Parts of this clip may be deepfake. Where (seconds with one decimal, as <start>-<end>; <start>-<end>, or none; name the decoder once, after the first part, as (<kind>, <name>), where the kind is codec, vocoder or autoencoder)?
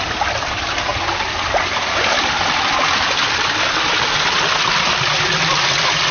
none